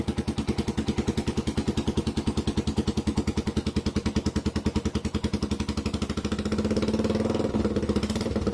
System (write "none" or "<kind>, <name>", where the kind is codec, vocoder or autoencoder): none